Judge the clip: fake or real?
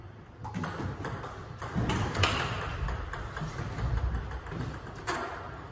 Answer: real